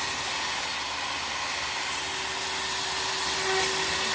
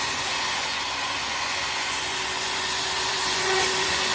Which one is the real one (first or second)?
first